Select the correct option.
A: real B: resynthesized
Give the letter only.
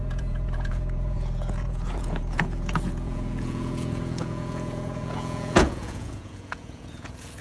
B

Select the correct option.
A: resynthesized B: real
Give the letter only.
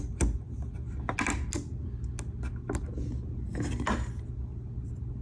B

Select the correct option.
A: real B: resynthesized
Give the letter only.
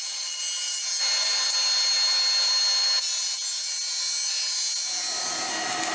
A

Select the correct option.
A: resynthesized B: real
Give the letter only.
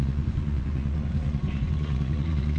A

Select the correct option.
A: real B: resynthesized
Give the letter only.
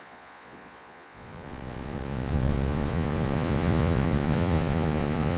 B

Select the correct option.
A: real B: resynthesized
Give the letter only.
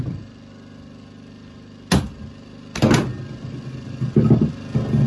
A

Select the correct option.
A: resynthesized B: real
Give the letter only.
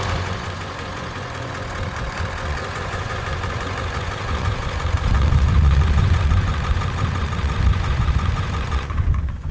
A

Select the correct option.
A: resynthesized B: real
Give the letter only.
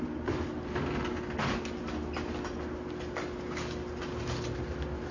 B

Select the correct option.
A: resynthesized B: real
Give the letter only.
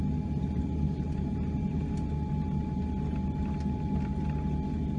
B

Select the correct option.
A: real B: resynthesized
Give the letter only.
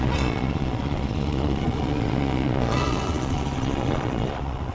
B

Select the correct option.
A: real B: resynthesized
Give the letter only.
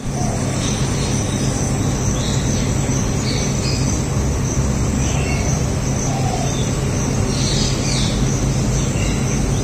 A